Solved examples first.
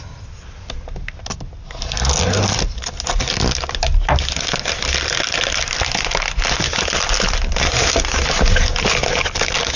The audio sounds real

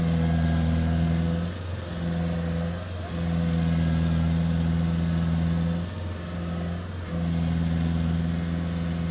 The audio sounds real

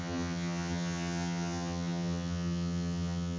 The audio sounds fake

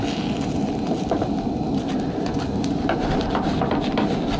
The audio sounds real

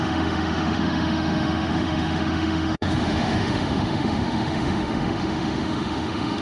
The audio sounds fake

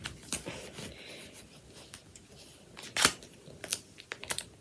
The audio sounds real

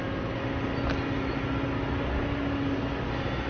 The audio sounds real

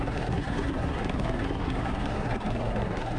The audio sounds fake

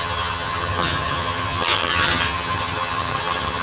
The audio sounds fake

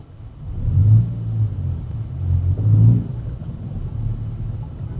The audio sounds real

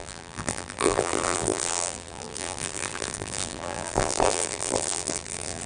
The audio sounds fake